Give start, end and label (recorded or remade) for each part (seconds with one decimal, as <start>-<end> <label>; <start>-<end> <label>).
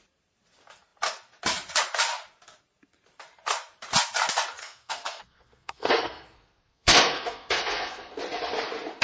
0.0-4.6 recorded; 4.6-8.2 remade; 8.2-9.0 recorded